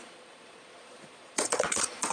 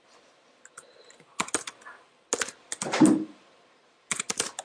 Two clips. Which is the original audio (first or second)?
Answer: second